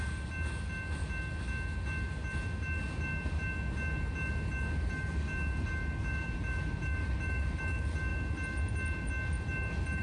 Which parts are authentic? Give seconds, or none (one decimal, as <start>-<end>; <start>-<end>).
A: 0.0-6.1; 7.6-10.0